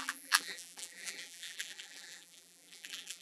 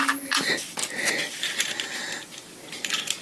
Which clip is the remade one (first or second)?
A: first